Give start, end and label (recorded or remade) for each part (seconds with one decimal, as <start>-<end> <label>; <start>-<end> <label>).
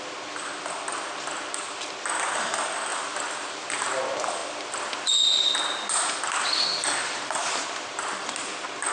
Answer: 0.0-2.9 recorded; 2.9-4.0 remade; 4.0-8.9 recorded